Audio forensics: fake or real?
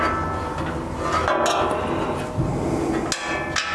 real